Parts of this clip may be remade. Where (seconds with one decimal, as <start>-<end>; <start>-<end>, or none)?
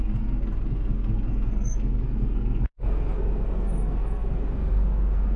0.0-5.4